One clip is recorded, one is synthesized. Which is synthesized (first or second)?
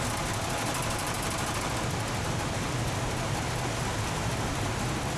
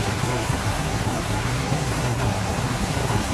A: second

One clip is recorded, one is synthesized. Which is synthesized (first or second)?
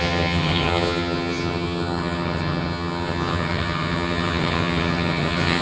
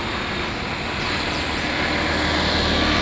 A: first